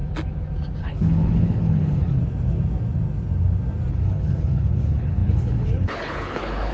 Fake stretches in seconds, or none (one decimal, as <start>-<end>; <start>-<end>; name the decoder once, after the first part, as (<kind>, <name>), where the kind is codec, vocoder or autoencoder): 0.8-2.2 (codec, HILCodec); 3.9-6.7